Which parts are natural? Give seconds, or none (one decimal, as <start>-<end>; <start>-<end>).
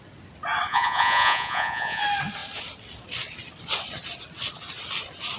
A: 0.0-0.7; 2.0-5.4